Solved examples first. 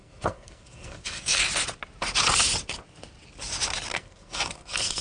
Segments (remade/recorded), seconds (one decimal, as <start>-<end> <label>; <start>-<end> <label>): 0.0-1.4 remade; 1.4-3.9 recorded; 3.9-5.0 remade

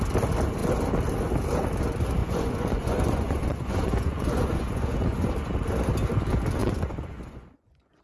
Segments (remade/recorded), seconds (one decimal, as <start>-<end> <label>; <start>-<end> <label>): 0.0-2.2 recorded; 2.2-5.3 remade; 5.3-6.6 recorded; 6.6-8.0 remade

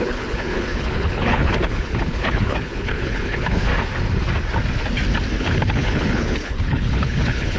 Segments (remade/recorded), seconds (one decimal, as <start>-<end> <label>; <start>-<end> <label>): 0.0-3.7 remade; 3.7-5.4 recorded; 5.4-7.6 remade

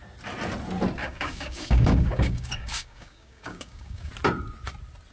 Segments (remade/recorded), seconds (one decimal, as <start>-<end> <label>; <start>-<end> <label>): 0.0-1.0 recorded; 1.0-4.1 remade; 4.1-5.1 recorded

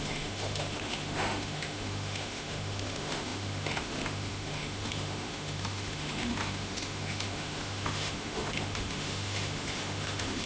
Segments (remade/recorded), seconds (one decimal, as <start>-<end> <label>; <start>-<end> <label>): 0.0-10.5 remade

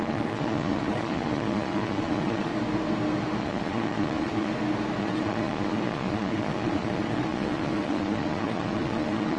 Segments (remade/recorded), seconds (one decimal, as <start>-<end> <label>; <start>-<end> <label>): 0.0-2.5 remade; 2.5-3.4 recorded; 3.4-4.5 remade; 4.5-5.0 recorded; 5.0-9.4 remade

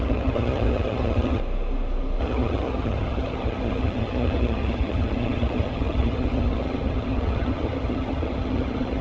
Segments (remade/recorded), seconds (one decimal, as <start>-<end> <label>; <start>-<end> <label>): 0.0-1.4 remade; 1.4-2.2 recorded; 2.2-9.0 remade